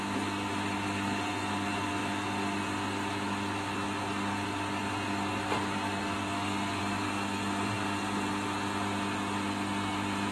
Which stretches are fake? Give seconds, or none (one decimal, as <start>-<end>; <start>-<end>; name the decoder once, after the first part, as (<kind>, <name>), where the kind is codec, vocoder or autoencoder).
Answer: none